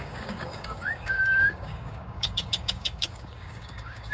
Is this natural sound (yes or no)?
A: no